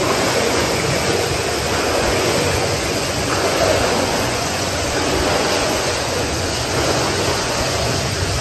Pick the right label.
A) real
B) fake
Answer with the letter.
B